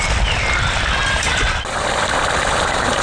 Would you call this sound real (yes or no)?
yes